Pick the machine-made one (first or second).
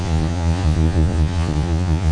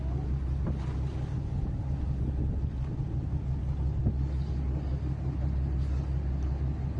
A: first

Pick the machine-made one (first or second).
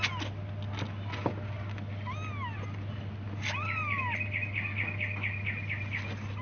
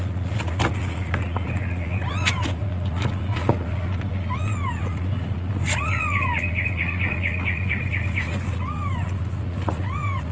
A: second